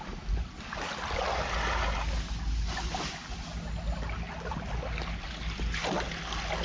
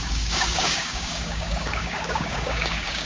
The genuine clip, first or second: first